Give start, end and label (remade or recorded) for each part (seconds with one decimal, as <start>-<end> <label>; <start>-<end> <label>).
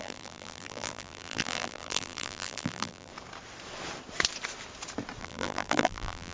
0.0-3.1 remade; 3.1-5.2 recorded; 5.2-6.3 remade